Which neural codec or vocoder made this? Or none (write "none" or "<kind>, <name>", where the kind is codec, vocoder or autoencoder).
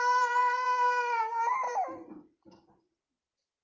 vocoder, BigVGAN v2